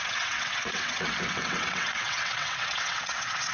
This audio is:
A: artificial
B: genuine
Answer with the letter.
A